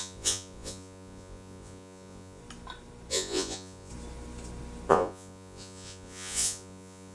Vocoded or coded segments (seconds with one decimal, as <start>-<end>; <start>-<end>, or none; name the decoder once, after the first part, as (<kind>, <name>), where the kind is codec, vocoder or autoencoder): 0.0-2.4 (vocoder, Vocos); 3.1-3.9; 4.9-7.1